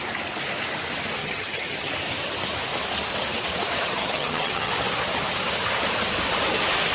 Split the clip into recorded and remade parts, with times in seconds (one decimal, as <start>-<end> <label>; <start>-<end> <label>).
0.0-1.2 recorded; 1.2-1.9 remade; 1.9-4.0 recorded; 4.0-4.7 remade; 4.7-6.9 recorded